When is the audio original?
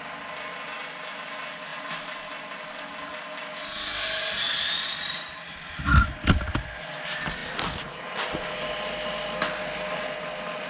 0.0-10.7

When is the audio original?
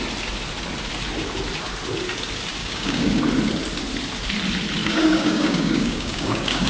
0.0-2.6; 3.2-4.8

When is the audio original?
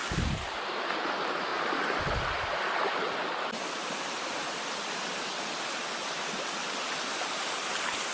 0.0-8.1